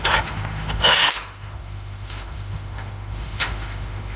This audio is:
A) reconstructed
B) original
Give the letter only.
A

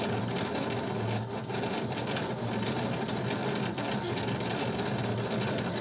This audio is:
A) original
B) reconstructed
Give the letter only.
A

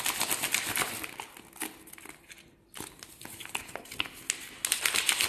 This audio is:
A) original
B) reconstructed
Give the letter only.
A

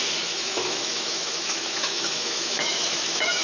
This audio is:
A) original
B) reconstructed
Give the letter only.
B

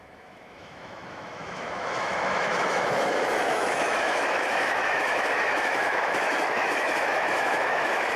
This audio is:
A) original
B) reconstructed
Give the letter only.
B